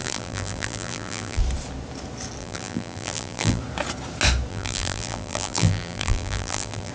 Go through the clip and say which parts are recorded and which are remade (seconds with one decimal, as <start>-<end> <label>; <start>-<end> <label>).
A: 0.0-1.4 remade; 1.4-2.4 recorded; 2.4-3.6 remade; 3.6-4.5 recorded; 4.5-6.9 remade